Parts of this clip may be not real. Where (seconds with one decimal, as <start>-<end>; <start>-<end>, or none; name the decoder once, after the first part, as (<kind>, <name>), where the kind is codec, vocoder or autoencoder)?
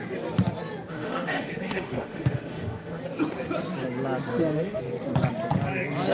0.9-3.0 (autoencoder, DAC-VAE); 4.3-4.8